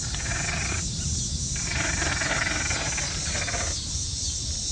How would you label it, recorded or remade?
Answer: recorded